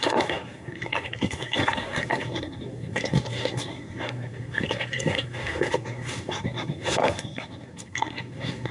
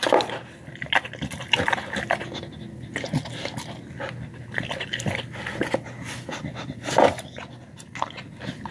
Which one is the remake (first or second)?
first